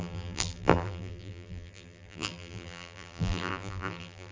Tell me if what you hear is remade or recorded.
remade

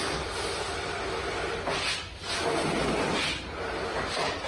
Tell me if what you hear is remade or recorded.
recorded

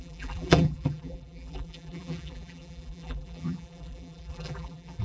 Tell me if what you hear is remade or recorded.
remade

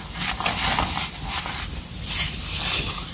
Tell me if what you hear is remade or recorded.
recorded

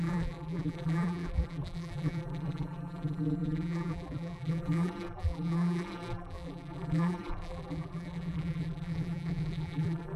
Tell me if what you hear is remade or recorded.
remade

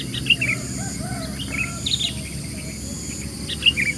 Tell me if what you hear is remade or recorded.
recorded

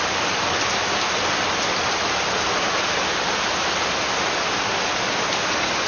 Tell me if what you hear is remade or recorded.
recorded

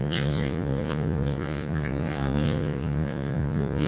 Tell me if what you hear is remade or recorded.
remade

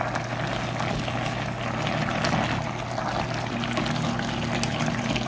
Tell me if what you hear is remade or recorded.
recorded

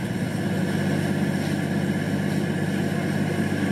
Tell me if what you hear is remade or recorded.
recorded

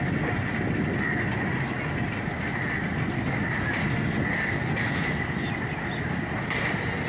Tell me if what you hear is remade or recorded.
recorded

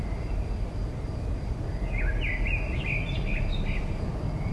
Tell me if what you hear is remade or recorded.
recorded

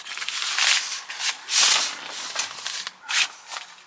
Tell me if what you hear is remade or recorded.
recorded